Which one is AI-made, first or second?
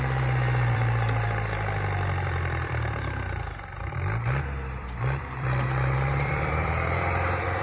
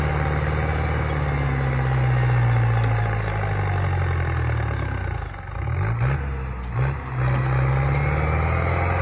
first